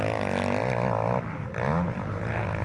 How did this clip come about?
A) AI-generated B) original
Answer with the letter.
B